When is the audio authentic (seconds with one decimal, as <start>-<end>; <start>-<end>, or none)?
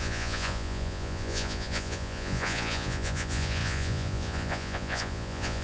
none